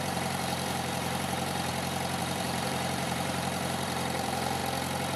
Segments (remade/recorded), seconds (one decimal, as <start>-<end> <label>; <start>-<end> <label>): 0.0-1.7 remade; 1.7-2.2 recorded; 2.2-4.6 remade; 4.6-5.2 recorded